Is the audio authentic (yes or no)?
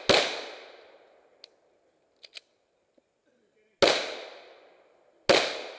yes